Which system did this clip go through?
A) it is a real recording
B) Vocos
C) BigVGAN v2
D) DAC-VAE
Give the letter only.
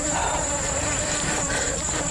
C